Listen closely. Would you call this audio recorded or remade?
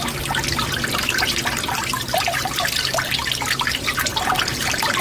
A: remade